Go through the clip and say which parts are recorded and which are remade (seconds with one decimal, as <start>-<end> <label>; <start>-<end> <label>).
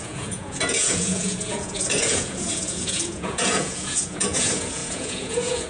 0.0-5.7 remade